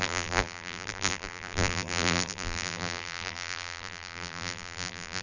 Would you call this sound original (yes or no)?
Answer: no